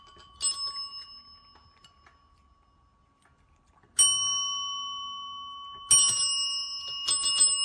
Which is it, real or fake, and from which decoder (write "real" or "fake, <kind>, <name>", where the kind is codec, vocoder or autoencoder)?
real